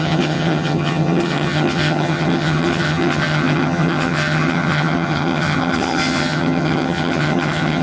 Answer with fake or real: fake